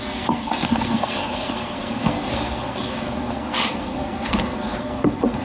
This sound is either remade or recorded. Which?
remade